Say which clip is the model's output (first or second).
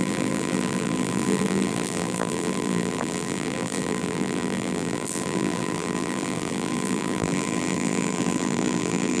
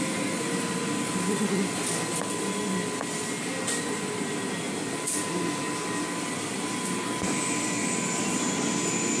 first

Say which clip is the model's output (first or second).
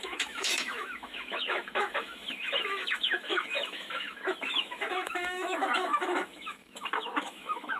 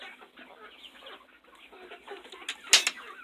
first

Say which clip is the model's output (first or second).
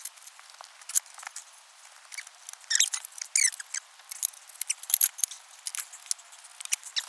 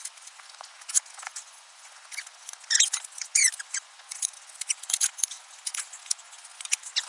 second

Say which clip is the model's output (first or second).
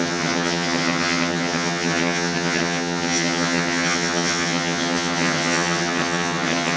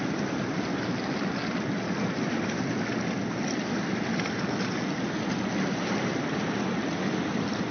first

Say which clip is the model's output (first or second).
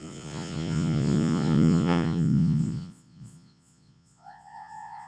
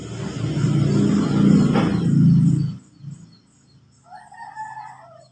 first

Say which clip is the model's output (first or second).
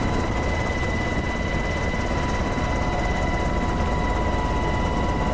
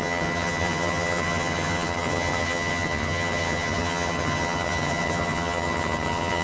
second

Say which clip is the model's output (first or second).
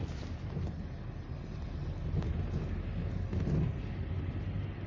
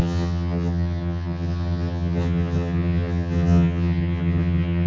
second